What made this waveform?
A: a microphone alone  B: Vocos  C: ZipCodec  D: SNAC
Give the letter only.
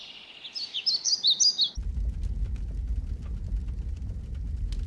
A